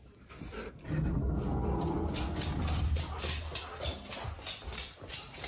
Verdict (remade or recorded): recorded